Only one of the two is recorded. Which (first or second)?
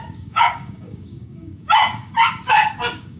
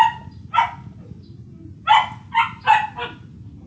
second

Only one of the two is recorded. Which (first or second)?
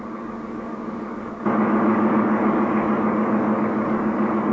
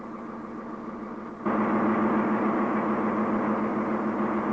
second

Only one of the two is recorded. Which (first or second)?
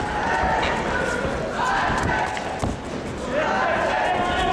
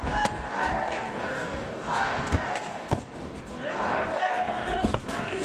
first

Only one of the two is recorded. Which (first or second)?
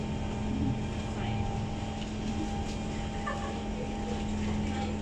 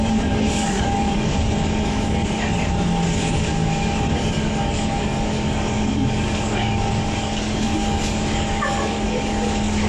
first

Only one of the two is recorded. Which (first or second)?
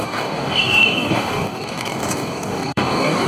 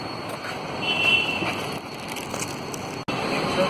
second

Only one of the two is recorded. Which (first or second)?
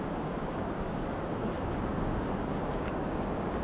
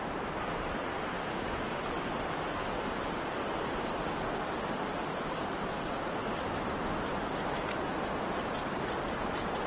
second